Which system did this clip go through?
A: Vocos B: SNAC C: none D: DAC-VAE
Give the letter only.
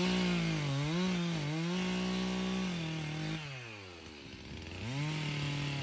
C